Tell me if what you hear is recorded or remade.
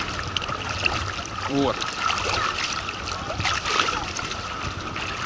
remade